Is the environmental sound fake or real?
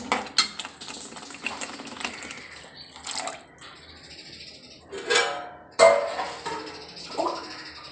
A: real